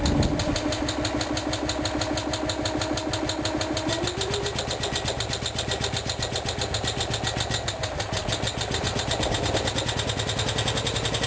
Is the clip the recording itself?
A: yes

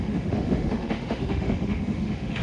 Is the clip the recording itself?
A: no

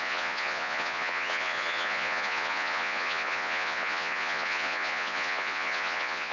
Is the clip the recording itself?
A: no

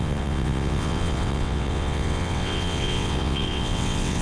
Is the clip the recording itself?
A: no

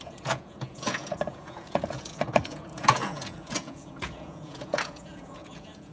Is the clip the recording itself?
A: no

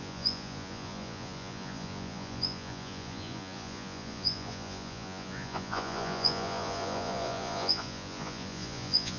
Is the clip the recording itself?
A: no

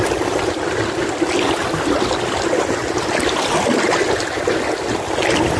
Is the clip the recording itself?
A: yes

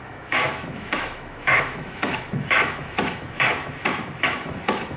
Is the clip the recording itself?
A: no